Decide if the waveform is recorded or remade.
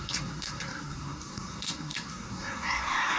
remade